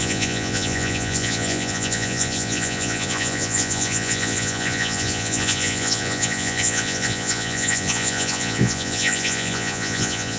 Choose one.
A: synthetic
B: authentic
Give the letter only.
A